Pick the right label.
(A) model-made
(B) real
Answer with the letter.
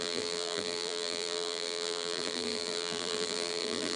A